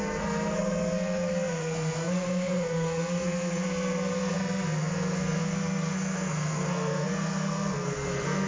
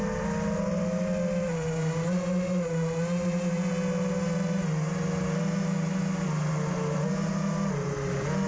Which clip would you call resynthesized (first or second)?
first